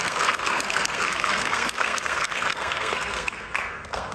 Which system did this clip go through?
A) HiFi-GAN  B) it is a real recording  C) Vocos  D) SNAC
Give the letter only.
D